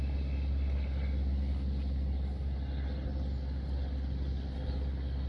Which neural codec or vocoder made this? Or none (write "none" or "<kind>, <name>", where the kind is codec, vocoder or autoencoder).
none